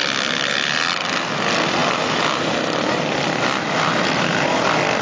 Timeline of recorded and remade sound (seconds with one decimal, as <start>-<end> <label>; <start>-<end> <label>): 0.0-5.0 recorded